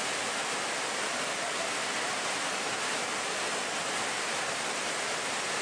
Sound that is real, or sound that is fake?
fake